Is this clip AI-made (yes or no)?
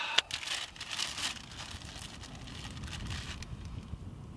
no